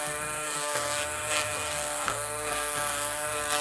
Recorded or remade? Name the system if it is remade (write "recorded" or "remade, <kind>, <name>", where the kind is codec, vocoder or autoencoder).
remade, codec, SNAC